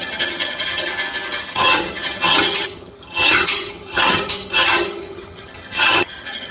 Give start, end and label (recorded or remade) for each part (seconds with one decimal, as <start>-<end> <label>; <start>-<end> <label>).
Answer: 0.0-0.9 remade; 0.9-1.4 recorded; 1.4-6.5 remade